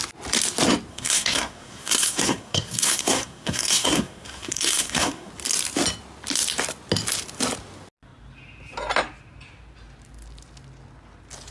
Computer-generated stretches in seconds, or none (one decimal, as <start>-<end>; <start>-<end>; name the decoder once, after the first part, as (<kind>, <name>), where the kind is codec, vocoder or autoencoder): 0.9-5.3 (codec, SNAC)